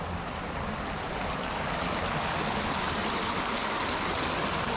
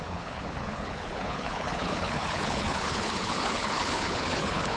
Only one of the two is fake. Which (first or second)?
second